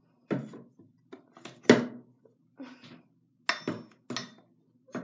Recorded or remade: recorded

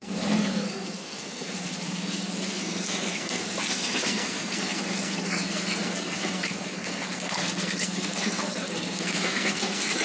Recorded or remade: remade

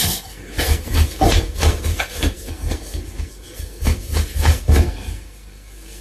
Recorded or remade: remade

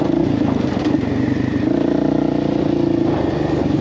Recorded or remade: recorded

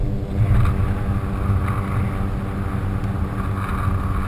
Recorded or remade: recorded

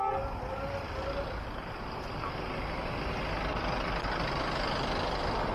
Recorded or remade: recorded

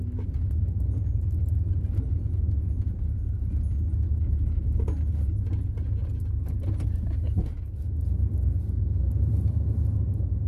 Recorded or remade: recorded